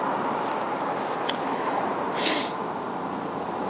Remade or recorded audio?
recorded